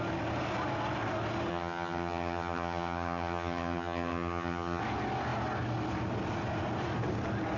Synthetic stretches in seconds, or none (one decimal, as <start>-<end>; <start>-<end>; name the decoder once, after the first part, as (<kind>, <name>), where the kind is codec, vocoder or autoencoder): 1.5-4.8 (vocoder, HiFi-GAN)